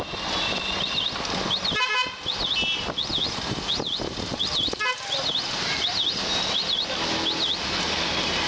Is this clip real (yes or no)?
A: yes